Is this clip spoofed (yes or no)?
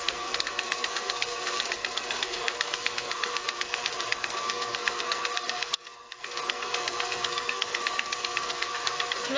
yes